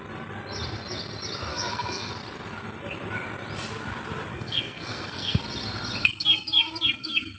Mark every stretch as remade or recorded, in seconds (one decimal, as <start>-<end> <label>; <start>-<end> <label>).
0.0-1.5 recorded; 1.5-2.1 remade; 2.1-4.3 recorded; 4.3-5.4 remade; 5.4-6.0 recorded; 6.0-7.4 remade